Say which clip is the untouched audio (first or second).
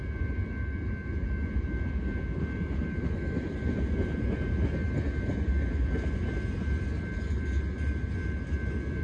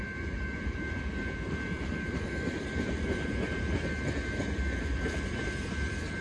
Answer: first